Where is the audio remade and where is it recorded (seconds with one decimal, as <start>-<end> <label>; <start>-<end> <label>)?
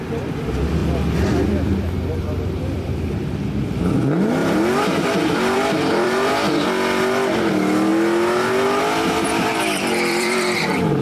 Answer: 0.0-0.8 recorded; 0.8-3.1 remade; 3.1-4.4 recorded; 4.4-6.5 remade; 6.5-9.5 recorded; 9.5-10.6 remade; 10.6-11.0 recorded